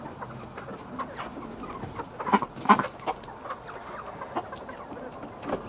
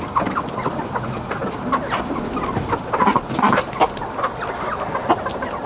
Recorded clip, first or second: first